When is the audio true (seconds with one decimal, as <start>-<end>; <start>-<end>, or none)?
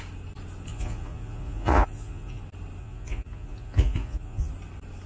0.0-0.7; 2.4-2.8; 4.5-5.1